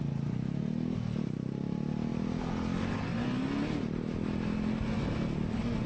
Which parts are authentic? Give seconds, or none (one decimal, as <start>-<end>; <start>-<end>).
0.0-5.9